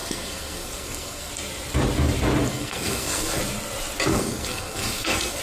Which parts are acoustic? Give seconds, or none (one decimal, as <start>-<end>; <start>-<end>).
1.3-2.5; 3.4-4.1